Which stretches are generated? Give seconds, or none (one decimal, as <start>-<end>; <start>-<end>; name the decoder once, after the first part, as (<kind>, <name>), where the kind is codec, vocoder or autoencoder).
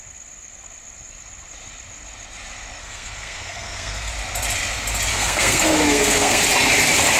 2.8-4.1 (codec, SNAC); 5.1-6.4